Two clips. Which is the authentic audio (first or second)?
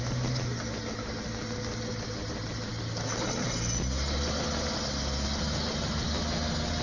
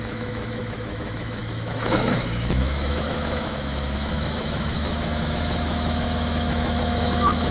first